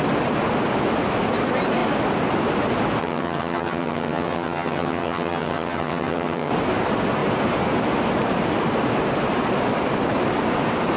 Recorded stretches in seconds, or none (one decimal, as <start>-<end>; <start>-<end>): 0.0-3.0; 6.5-11.0